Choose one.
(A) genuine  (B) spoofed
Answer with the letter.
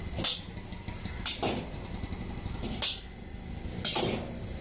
A